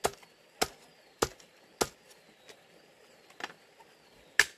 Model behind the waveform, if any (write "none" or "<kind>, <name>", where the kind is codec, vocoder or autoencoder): none